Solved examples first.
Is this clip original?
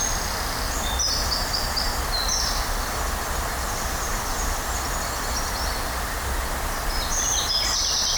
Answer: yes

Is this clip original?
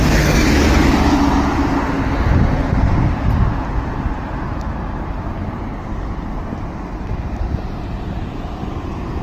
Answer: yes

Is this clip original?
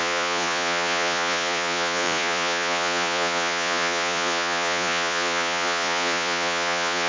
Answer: no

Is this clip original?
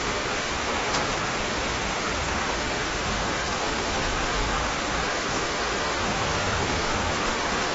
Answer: no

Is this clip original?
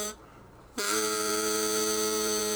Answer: no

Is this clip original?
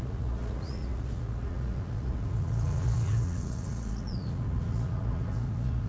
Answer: no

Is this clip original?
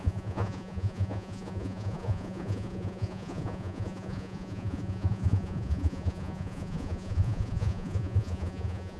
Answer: no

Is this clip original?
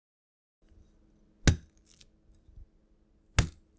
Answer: yes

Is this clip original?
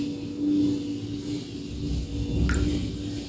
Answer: yes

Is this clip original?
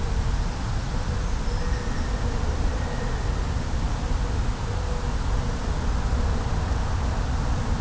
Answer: yes